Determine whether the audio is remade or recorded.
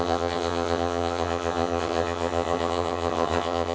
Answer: remade